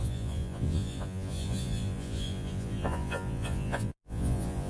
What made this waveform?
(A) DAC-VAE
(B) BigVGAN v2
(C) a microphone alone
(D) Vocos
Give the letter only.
D